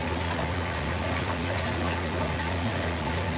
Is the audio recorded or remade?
remade